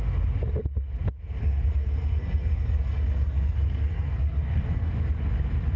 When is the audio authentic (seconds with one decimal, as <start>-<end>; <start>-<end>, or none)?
0.0-1.4; 4.9-5.8